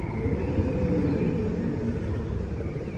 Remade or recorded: recorded